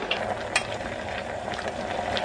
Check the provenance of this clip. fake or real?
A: real